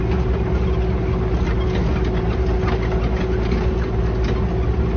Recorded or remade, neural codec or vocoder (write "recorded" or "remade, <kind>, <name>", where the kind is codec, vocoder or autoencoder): recorded